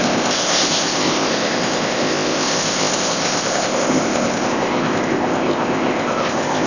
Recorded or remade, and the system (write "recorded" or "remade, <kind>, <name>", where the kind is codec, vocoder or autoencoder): remade, codec, ZipCodec